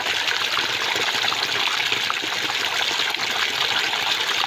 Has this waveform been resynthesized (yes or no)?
no